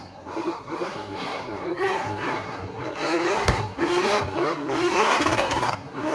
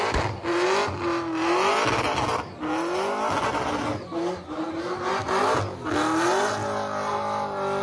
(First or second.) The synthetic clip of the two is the first